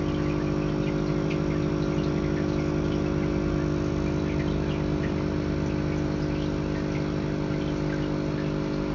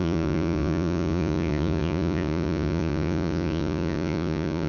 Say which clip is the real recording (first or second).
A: first